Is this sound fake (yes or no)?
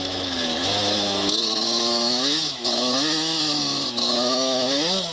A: yes